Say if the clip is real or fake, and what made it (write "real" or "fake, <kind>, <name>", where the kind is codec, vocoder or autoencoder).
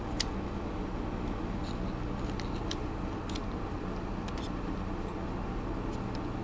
real